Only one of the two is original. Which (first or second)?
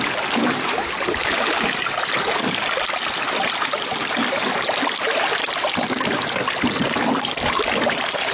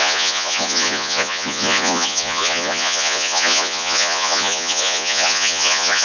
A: first